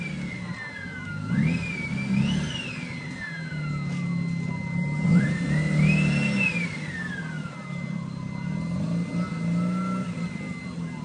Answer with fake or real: real